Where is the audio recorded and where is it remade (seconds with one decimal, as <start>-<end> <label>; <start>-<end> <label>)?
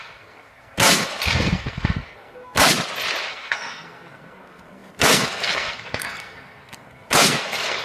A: 0.0-2.7 remade; 2.7-3.3 recorded; 3.3-7.8 remade